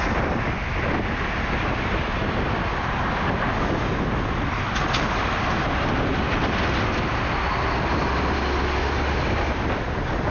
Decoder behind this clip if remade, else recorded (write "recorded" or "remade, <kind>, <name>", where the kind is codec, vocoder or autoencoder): recorded